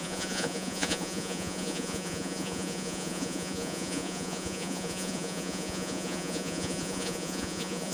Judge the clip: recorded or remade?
remade